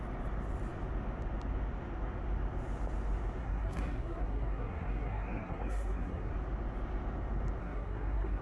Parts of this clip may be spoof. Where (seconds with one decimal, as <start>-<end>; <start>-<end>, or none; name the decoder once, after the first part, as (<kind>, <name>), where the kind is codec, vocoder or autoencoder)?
3.4-6.3 (codec, SNAC); 7.6-8.4